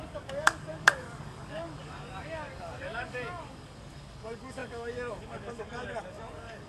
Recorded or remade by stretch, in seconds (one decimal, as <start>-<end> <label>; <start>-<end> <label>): 0.0-6.7 remade